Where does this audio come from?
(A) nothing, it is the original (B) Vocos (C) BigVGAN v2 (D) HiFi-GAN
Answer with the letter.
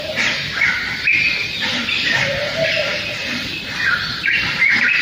C